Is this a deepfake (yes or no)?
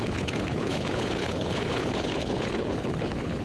yes